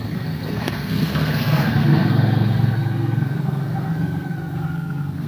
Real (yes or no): no